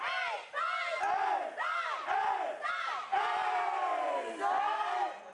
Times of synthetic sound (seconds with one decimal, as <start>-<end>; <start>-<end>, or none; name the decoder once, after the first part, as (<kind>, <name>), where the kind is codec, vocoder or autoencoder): 3.1-4.1 (vocoder, BigVGAN v2)